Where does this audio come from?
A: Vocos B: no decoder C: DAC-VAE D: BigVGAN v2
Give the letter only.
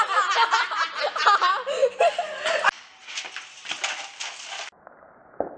B